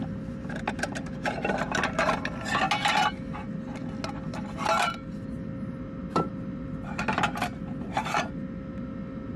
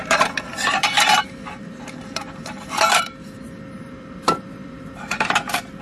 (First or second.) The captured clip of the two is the first